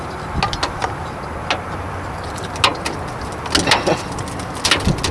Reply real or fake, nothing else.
real